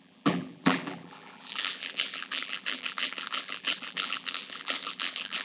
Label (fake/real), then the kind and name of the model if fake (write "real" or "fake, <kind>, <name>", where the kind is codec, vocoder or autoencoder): fake, vocoder, BigVGAN v2